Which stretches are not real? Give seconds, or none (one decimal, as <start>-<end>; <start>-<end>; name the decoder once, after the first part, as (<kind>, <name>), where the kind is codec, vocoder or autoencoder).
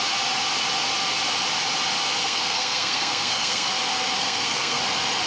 2.2-3.7 (codec, SNAC); 4.2-4.8